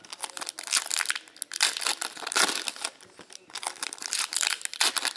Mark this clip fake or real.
real